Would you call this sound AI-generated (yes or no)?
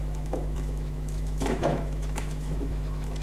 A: yes